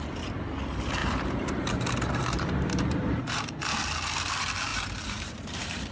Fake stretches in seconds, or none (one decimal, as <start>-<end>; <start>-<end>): 1.0-3.7; 4.7-5.9